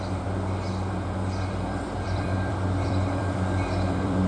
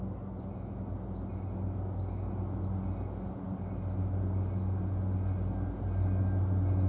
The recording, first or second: second